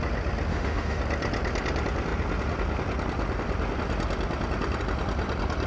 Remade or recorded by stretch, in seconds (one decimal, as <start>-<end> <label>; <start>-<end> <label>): 0.0-0.5 recorded; 0.5-1.0 remade; 1.0-5.7 recorded